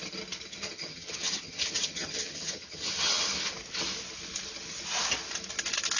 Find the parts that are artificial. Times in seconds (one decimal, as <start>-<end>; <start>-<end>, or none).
0.5-3.5